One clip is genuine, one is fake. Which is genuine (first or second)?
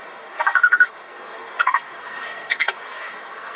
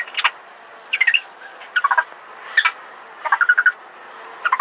second